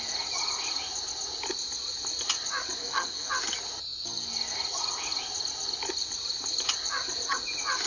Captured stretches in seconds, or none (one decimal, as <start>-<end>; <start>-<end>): 0.0-2.8; 3.3-7.9